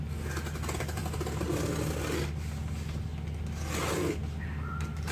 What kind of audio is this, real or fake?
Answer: real